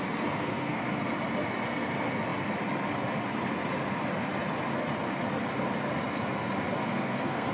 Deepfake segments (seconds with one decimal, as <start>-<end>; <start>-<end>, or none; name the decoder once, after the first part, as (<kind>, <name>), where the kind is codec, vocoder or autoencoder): 0.4-1.0 (codec, SNAC); 6.8-7.5